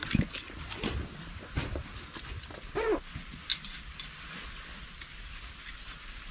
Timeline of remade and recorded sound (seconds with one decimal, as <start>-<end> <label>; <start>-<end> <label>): 0.0-2.5 remade; 2.5-6.3 recorded